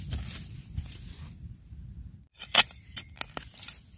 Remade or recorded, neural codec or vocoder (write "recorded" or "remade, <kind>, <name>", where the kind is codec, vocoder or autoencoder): recorded